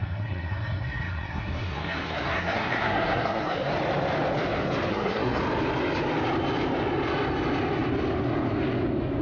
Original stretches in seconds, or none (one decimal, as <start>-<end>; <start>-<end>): 3.7-4.9; 5.4-9.2